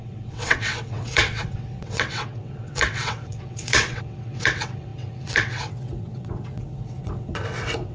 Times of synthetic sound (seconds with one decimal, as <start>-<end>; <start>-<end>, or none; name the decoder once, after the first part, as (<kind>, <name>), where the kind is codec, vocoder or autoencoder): 0.0-7.9 (vocoder, WaveNeXt)